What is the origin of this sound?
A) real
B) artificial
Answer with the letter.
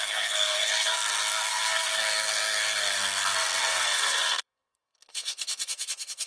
B